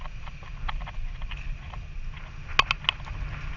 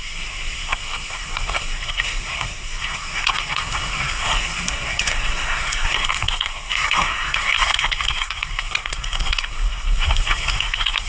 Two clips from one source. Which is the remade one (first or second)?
second